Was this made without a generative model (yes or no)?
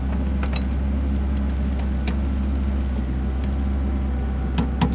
yes